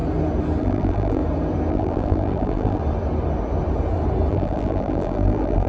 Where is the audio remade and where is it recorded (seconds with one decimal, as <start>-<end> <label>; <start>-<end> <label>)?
0.0-0.6 recorded; 0.6-1.2 remade; 1.2-1.7 recorded; 1.7-2.8 remade; 2.8-4.3 recorded; 4.3-5.7 remade